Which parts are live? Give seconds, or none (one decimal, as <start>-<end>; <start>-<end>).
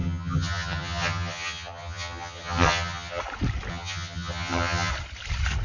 3.2-3.7; 4.9-5.6